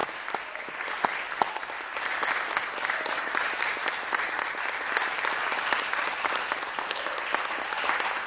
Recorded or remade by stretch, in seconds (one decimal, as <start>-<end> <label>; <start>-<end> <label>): 0.0-8.3 recorded